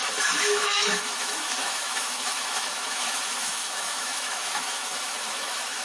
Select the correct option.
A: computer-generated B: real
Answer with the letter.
A